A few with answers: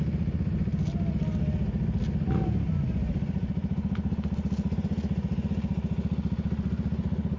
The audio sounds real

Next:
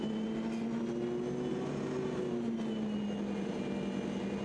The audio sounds real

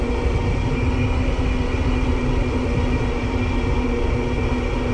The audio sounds real